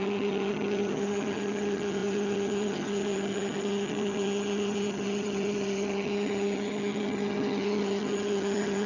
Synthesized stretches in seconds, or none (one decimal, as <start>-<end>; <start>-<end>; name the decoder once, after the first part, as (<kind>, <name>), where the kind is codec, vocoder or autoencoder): 0.0-8.9 (vocoder, HiFi-GAN)